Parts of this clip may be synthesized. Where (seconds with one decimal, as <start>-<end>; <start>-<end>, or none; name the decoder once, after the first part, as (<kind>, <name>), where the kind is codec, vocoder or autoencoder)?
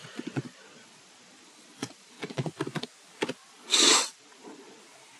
0.0-2.5 (vocoder, Vocos); 3.4-4.8